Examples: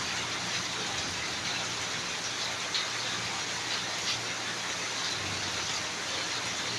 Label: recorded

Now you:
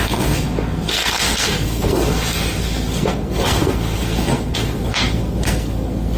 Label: remade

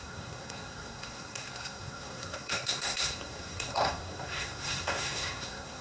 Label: remade